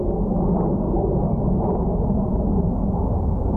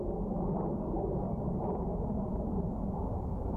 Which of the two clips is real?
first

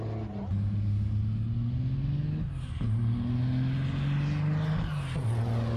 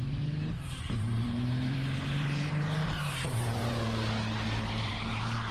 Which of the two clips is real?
first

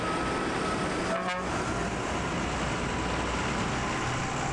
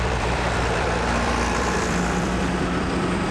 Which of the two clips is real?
first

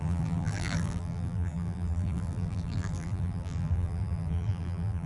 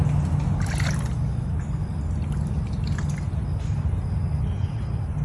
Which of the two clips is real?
second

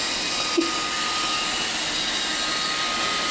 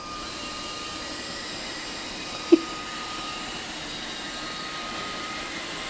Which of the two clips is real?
first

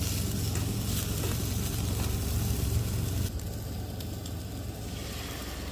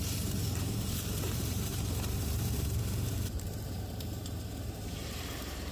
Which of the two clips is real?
first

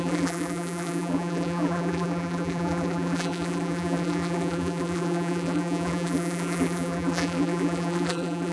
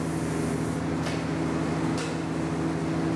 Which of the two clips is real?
second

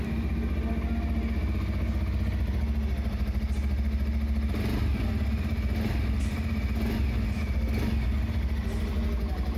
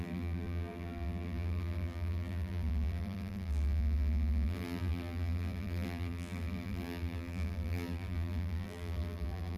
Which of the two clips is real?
first